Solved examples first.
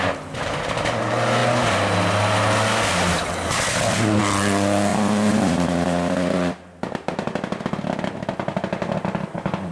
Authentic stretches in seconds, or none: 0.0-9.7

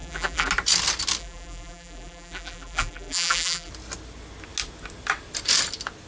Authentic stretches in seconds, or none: 0.5-1.2; 3.7-6.1

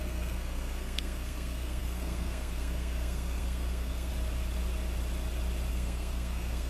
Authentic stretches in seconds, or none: 4.1-5.7

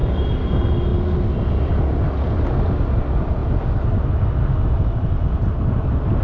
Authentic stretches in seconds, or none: 0.0-6.2

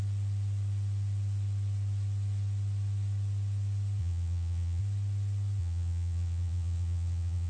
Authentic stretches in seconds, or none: 0.0-4.0; 4.8-5.6

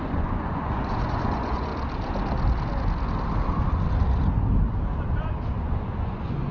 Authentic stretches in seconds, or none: 1.7-5.6